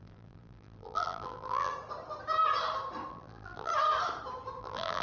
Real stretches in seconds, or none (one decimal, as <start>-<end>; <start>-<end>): 1.7-3.1; 3.7-4.6

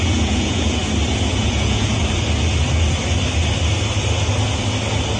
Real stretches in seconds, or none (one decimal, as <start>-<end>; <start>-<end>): 0.8-1.3; 2.0-5.2